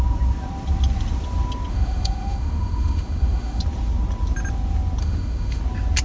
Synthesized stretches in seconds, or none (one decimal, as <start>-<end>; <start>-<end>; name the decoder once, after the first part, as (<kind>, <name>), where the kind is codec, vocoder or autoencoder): 1.7-3.6 (autoencoder, DAC-VAE); 5.0-5.6